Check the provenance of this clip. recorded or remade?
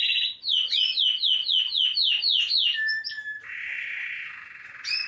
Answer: recorded